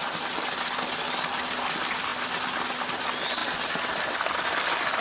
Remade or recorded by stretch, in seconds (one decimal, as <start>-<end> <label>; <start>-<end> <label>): 0.0-5.0 recorded